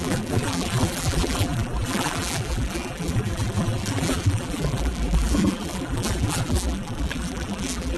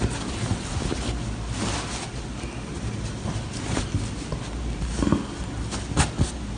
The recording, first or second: second